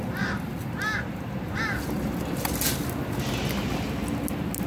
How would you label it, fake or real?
real